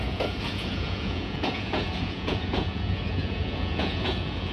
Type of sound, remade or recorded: remade